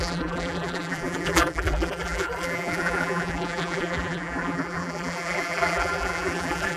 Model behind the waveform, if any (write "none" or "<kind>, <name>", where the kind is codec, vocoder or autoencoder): vocoder, BigVGAN v2